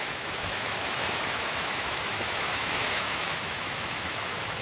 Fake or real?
fake